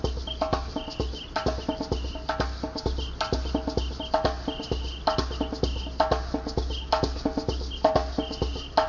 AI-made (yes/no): no